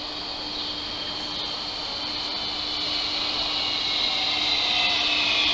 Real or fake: real